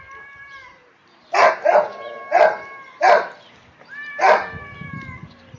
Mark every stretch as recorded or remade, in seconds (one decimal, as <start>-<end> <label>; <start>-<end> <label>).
0.0-5.6 recorded